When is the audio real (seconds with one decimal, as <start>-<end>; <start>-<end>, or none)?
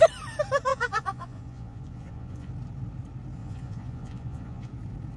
0.0-0.7; 2.5-3.4; 4.7-5.2